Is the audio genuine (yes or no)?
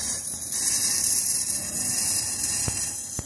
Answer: no